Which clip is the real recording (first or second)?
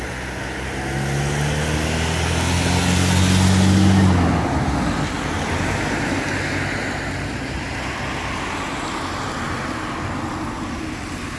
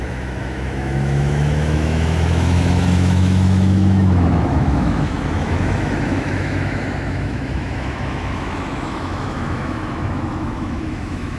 first